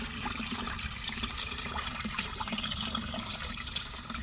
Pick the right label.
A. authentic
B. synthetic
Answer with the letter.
B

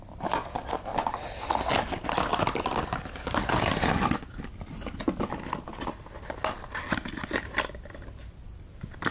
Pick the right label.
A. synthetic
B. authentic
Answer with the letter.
B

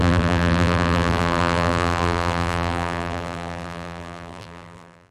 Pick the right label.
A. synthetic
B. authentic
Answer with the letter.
A